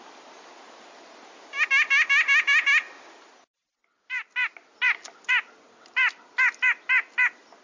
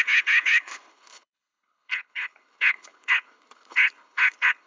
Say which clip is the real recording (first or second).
first